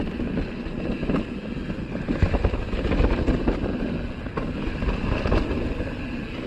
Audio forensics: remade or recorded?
recorded